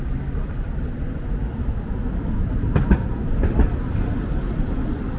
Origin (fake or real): real